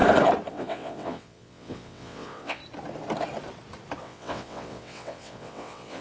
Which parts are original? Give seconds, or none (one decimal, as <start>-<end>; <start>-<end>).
0.0-0.5; 2.6-4.0

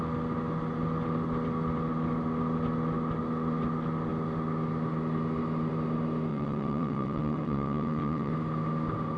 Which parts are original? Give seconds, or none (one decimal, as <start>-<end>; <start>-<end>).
0.0-6.3; 8.3-9.2

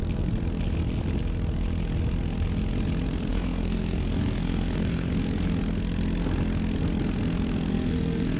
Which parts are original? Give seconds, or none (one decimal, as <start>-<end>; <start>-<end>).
0.0-3.3; 5.1-7.7

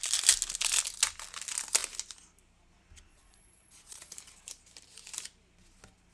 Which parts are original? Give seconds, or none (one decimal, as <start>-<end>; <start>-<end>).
0.0-3.1; 4.1-6.1

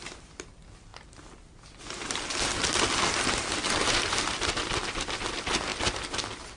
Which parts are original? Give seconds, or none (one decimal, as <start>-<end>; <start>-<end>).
0.0-6.6

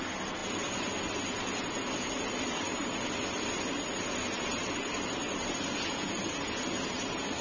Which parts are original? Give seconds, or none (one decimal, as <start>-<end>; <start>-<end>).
0.0-7.4